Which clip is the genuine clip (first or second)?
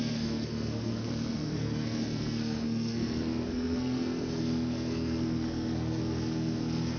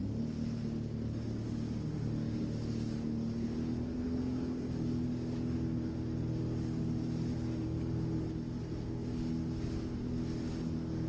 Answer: second